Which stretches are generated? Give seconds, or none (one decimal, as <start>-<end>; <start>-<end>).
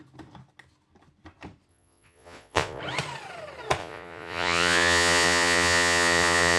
1.7-2.8; 3.8-6.6